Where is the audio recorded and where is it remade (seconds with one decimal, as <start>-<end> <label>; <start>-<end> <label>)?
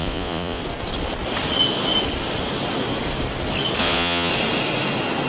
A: 0.0-0.6 remade; 0.6-3.8 recorded; 3.8-4.3 remade; 4.3-5.3 recorded